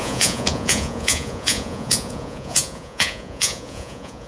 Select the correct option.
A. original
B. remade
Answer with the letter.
B